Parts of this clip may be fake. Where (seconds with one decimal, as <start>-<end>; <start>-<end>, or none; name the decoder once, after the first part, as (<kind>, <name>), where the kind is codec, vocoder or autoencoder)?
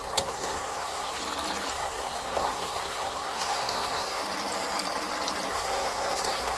0.0-1.2 (codec, SNAC); 1.7-4.2; 5.5-6.6